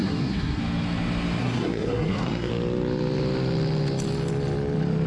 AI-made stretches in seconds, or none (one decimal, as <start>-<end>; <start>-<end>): 0.0-0.6; 1.4-2.5